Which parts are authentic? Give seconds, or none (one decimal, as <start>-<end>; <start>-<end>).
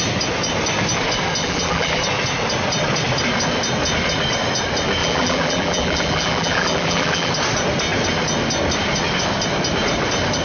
0.0-1.4; 2.0-5.0; 7.3-10.4